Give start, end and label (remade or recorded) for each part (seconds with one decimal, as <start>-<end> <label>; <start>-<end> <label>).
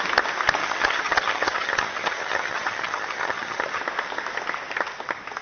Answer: 0.0-0.6 recorded; 0.6-3.8 remade; 3.8-5.4 recorded